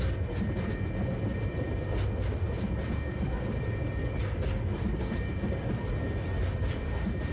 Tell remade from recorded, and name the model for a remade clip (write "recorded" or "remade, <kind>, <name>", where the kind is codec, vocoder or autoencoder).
recorded